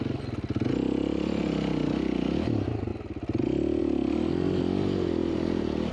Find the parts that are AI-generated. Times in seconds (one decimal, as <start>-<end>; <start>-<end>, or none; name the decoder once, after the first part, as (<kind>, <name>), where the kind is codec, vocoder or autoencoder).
5.2-5.9 (vocoder, BigVGAN v2)